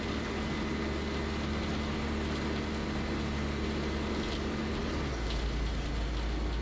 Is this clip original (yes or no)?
yes